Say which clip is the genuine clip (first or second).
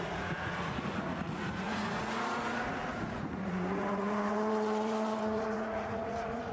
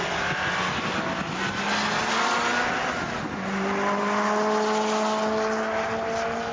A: second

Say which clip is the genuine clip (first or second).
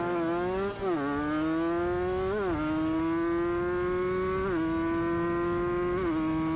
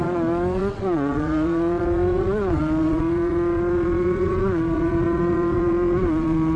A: first